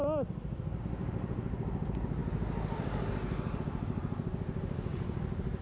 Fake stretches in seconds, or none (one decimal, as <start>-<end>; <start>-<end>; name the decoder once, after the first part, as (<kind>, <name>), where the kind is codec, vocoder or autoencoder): none